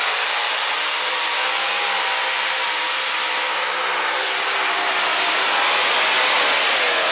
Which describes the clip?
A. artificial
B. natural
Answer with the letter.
B